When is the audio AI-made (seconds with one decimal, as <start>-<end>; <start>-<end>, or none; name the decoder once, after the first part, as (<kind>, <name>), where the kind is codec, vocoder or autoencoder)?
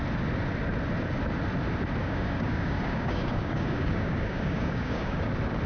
2.0-5.3 (codec, DAC)